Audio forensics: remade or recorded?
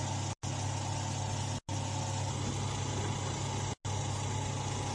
recorded